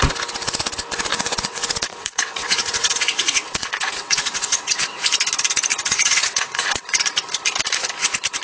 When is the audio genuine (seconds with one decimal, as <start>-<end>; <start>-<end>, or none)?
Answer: 0.0-1.1; 5.0-5.7; 7.0-8.4